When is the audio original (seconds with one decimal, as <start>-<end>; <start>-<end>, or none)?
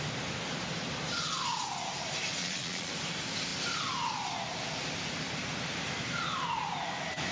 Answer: 0.0-2.4; 2.9-7.3